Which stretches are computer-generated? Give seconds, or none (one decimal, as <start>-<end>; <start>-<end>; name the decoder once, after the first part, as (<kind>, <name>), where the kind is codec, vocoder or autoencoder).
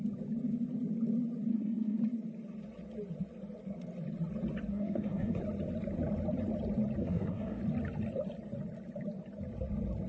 1.5-2.0 (codec, SNAC); 4.7-5.4; 7.0-7.6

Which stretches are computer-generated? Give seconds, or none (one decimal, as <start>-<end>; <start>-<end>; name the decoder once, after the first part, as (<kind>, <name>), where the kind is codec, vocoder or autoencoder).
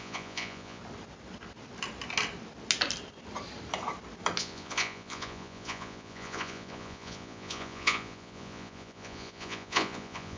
0.0-0.8 (vocoder, Vocos); 4.4-10.4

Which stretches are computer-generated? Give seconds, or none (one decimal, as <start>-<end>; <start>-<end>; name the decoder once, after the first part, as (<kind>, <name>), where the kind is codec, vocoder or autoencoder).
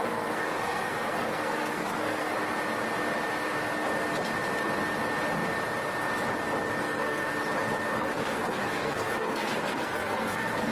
0.0-2.3 (codec, SNAC); 6.8-7.3; 7.9-10.7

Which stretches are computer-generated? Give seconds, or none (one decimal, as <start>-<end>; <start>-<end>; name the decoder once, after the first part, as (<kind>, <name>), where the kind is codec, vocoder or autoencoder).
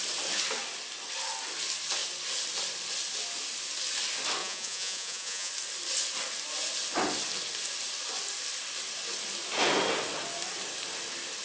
4.4-5.5 (vocoder, Vocos)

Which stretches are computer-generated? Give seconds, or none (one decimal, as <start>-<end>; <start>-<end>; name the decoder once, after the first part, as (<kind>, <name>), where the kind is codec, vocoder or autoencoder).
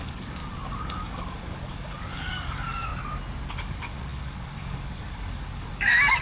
0.0-2.9 (codec, DAC); 3.5-6.2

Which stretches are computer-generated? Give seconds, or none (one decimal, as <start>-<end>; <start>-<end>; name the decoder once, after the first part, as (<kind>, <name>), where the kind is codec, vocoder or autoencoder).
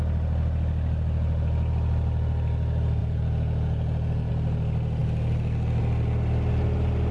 3.0-4.3 (vocoder, Vocos)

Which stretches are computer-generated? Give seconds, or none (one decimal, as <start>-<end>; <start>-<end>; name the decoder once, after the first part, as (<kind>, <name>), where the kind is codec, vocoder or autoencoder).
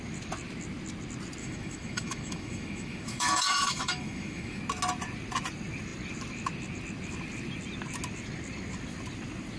1.4-4.6 (autoencoder, DAC-VAE)